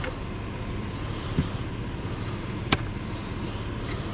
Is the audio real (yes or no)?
no